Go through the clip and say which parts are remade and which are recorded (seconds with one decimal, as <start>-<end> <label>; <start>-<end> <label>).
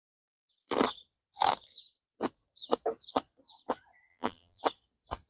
0.0-4.1 recorded; 4.1-4.6 remade; 4.6-5.3 recorded